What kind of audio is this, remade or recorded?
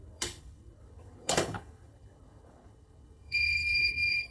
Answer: remade